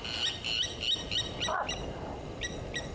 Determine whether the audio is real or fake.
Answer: real